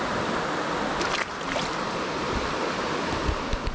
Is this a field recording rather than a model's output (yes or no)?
yes